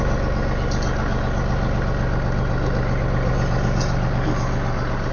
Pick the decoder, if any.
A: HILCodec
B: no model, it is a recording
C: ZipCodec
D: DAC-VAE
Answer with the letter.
B